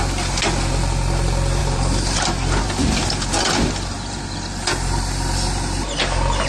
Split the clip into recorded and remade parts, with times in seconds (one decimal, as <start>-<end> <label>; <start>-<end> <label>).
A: 0.0-1.6 recorded; 1.6-2.6 remade; 2.6-6.5 recorded